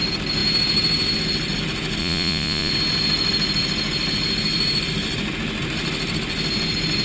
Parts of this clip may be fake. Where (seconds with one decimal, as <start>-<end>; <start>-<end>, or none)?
2.0-2.7